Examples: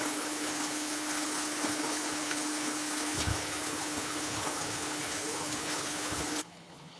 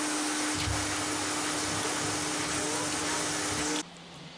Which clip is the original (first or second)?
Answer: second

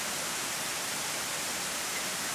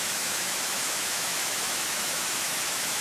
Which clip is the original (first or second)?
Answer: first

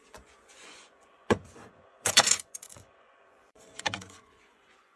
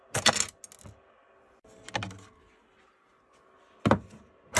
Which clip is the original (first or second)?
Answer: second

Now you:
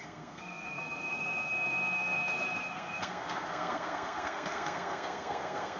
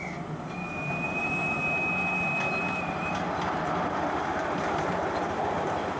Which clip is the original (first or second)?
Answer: second